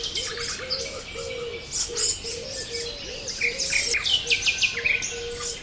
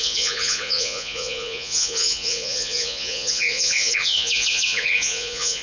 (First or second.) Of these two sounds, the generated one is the second